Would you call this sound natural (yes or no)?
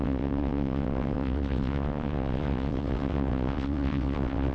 no